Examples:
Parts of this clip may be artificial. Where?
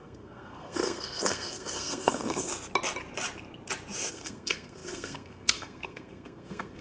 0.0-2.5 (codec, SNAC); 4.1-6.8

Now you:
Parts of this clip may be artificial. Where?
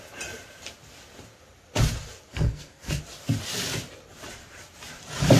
2.3-3.0 (codec, SNAC)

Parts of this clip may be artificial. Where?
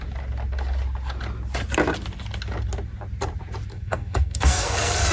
3.7-5.1 (codec, SNAC)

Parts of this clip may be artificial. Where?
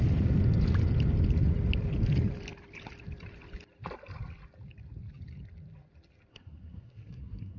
6.3-7.6 (codec, SNAC)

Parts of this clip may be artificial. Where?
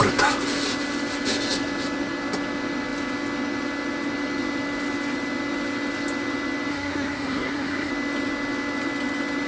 6.7-7.9 (codec, SNAC)